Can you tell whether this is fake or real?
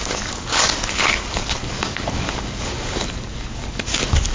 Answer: fake